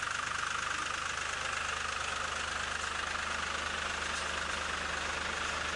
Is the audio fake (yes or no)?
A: no